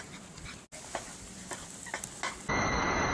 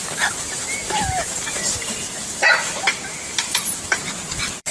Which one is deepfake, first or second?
second